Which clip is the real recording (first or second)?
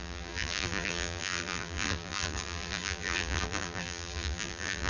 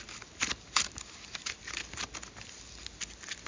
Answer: second